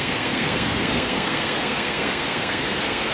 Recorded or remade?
remade